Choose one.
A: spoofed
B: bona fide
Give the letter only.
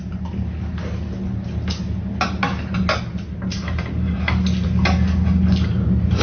B